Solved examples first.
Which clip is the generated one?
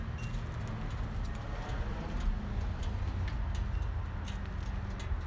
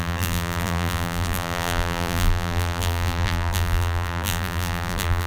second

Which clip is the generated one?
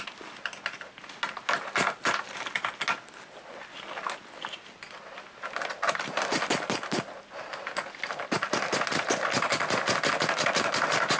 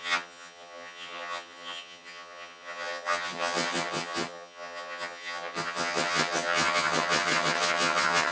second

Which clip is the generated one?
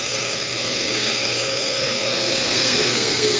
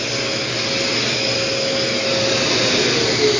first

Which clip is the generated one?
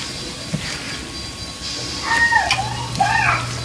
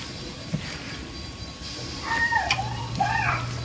second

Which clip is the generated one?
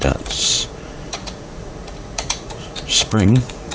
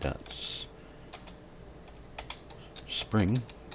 first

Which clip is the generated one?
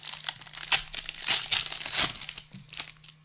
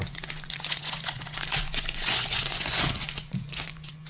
second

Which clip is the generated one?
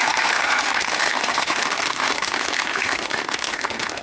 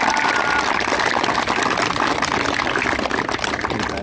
first